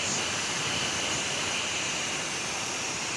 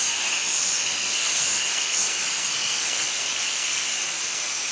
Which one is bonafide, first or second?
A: first